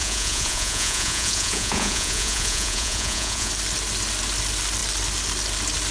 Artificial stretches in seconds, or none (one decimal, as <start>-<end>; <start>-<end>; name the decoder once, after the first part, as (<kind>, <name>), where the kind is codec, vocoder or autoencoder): 0.0-3.5 (vocoder, Vocos)